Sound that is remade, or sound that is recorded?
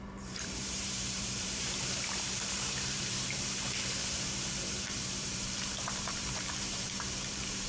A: remade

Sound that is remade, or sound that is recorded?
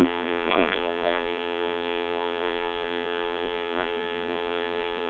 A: remade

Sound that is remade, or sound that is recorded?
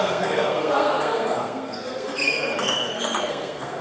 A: remade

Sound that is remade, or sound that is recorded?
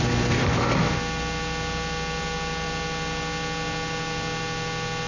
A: recorded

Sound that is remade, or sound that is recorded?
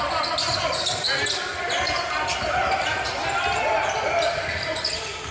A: recorded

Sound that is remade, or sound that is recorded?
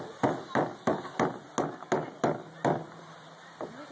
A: recorded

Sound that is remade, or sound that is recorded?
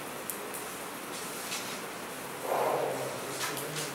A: recorded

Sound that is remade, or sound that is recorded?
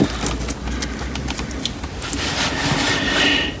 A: recorded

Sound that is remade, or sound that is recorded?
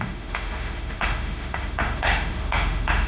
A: remade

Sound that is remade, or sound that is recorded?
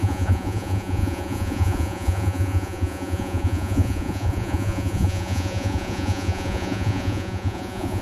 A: remade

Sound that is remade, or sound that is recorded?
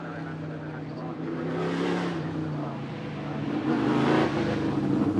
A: recorded